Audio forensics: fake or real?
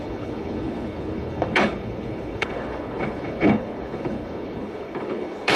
fake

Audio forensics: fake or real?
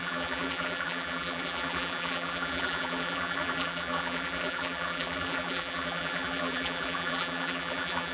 fake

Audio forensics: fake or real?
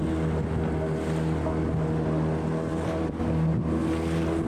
real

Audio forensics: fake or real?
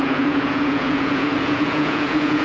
fake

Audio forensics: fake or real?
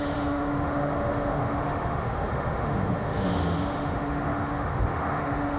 fake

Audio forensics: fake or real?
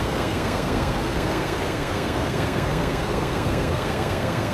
fake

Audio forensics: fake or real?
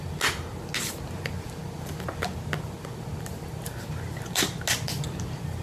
real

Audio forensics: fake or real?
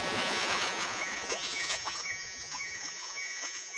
fake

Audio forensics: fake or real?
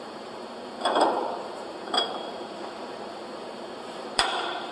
fake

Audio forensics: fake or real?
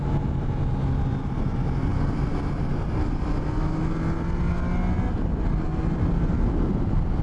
real